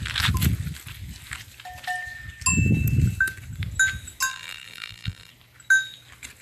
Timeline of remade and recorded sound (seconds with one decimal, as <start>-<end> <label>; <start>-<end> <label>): 0.0-4.3 recorded; 4.3-5.3 remade; 5.3-6.4 recorded